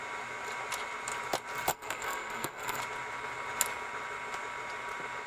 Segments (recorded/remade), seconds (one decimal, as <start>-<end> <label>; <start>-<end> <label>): 0.0-1.7 recorded; 1.7-2.8 remade; 2.8-5.3 recorded